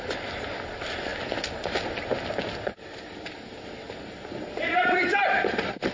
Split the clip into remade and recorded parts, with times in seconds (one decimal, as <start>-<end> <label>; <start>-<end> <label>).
0.0-1.1 remade; 1.1-4.6 recorded; 4.6-5.9 remade